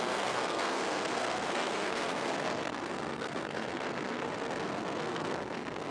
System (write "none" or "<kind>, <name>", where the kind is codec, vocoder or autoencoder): codec, SNAC